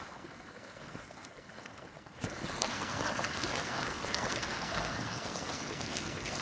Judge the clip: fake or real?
fake